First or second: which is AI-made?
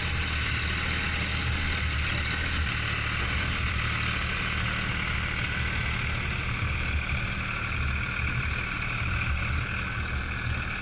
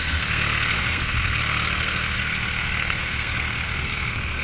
second